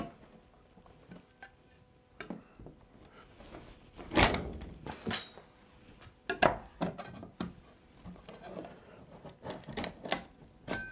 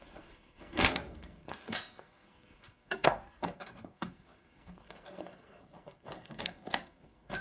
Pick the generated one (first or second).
second